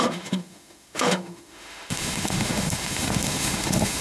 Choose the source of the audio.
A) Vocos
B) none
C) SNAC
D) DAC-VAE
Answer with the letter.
D